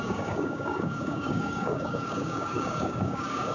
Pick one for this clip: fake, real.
fake